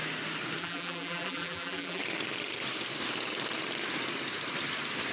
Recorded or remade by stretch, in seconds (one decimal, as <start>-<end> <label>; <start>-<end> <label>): 0.0-0.6 recorded; 0.6-2.0 remade; 2.0-5.1 recorded